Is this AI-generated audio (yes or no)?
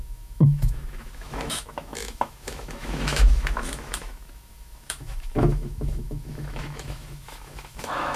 yes